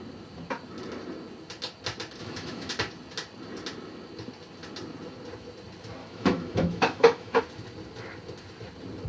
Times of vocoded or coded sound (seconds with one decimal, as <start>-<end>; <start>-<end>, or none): 2.2-2.7; 6.0-7.4